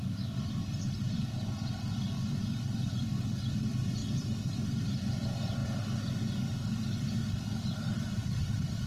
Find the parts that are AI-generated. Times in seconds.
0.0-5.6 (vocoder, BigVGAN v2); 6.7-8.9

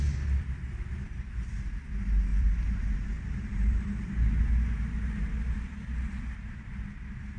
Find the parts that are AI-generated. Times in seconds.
2.3-6.7 (vocoder, BigVGAN v2)

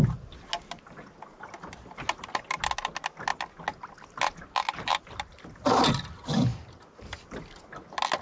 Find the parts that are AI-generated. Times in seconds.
none